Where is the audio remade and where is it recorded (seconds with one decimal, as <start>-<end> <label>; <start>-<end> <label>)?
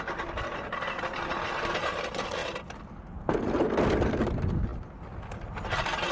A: 0.0-6.1 recorded